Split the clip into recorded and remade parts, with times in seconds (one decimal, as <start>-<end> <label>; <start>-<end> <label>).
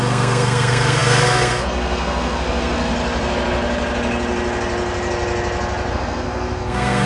0.0-2.9 remade; 2.9-5.9 recorded; 5.9-7.1 remade